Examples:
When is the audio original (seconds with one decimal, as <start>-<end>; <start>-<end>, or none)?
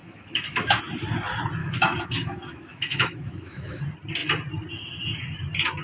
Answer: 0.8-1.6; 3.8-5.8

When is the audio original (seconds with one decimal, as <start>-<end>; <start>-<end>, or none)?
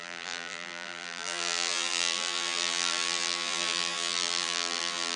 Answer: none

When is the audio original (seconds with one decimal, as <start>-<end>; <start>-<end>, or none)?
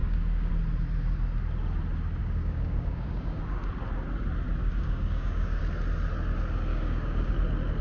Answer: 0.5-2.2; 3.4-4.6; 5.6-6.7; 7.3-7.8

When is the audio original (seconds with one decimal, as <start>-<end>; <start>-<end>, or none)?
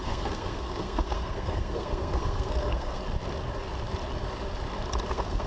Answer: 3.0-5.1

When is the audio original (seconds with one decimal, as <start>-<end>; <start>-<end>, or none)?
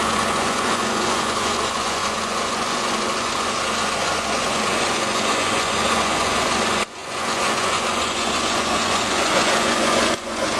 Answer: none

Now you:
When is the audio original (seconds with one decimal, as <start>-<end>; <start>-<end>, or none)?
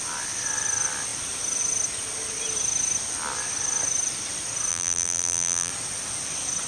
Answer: 0.0-4.7; 5.7-6.7